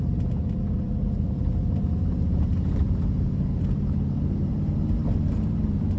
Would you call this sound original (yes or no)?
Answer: no